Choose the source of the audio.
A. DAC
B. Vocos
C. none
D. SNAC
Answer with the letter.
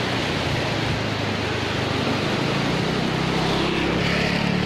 C